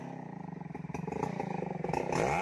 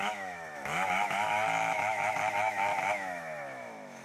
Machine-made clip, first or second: second